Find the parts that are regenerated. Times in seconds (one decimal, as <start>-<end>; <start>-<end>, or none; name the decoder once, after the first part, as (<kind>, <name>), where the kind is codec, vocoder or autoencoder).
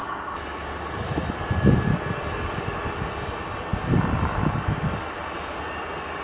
none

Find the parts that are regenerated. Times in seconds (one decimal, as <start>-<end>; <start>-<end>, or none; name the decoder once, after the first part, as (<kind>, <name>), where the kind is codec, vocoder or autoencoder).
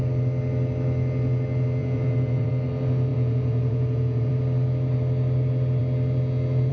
1.8-2.5 (vocoder, Vocos); 3.1-4.3